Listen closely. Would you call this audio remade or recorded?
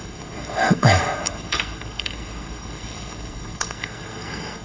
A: remade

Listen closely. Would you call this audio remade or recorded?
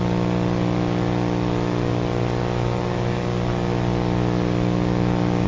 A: recorded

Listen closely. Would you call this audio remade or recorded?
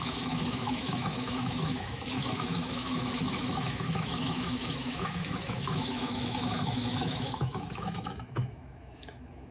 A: remade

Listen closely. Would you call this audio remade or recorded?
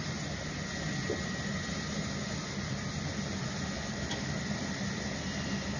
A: recorded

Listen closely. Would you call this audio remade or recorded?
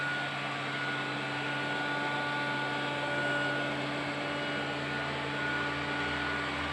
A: recorded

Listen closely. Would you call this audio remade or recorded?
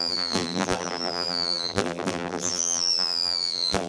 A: remade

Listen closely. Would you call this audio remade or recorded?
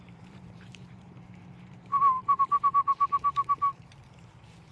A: remade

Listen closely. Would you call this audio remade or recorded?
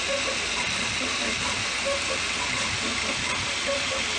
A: recorded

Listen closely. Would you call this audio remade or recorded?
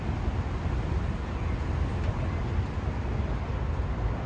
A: recorded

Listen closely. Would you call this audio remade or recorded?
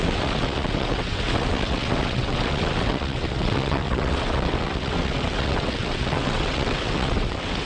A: remade